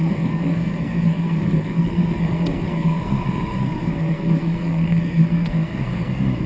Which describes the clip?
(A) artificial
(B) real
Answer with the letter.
A